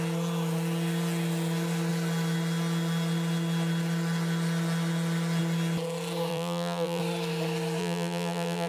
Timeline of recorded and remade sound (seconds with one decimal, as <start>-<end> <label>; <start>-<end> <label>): 0.0-6.3 recorded; 6.3-7.0 remade; 7.0-7.8 recorded; 7.8-8.7 remade

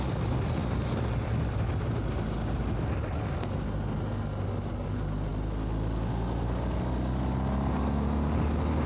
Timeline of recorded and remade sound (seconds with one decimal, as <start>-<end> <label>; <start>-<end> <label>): 0.0-0.6 recorded; 0.6-1.8 remade; 1.8-8.9 recorded

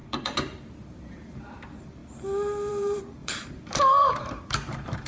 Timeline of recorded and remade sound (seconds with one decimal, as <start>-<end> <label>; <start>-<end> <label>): 0.0-2.0 remade; 2.0-2.7 recorded; 2.7-5.1 remade

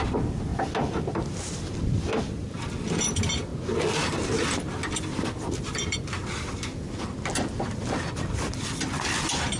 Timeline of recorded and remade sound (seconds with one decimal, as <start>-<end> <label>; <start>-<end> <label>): 0.0-0.5 remade; 0.5-1.3 recorded; 1.3-3.5 remade; 3.5-5.6 recorded; 5.6-6.7 remade; 6.7-7.9 recorded; 7.9-9.6 remade

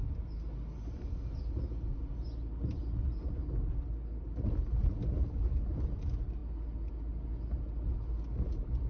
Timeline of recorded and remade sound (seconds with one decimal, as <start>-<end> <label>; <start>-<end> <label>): 0.0-8.9 recorded

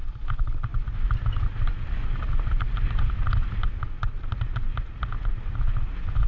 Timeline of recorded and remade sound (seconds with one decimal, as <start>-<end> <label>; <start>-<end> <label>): 0.0-6.3 recorded

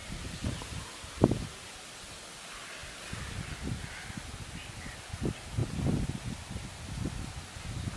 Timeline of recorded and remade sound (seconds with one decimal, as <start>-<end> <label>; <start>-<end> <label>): 0.0-1.4 remade; 1.4-8.0 recorded